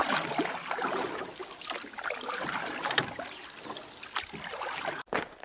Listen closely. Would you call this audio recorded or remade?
recorded